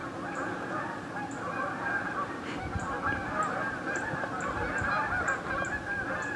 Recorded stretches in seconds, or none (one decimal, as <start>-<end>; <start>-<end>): 2.7-3.2; 5.5-6.4